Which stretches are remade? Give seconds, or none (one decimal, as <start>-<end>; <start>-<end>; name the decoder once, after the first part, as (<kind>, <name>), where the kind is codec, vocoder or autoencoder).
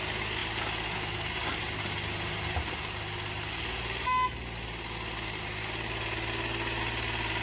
none